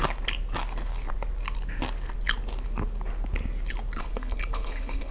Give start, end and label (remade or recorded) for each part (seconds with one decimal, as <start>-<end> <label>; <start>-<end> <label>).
0.0-4.0 recorded; 4.0-5.1 remade